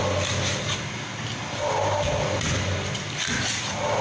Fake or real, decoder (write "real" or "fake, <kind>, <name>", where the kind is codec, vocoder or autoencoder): real